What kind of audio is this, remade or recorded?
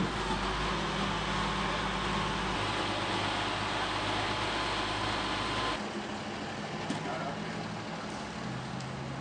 recorded